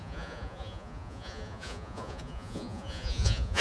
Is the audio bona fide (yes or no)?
no